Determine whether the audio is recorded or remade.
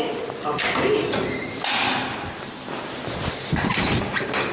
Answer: recorded